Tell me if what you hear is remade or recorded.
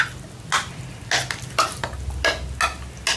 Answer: recorded